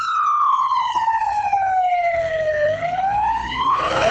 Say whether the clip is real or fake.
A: fake